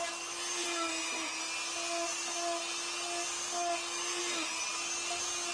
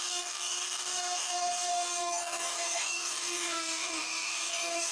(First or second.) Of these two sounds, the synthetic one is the second